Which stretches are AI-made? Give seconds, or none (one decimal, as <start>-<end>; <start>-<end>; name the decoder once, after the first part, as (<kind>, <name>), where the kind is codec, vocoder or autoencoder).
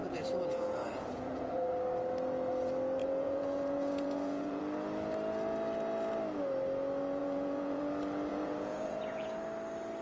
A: 0.0-1.7 (vocoder, Vocos); 3.0-4.6; 7.2-7.8; 8.3-9.4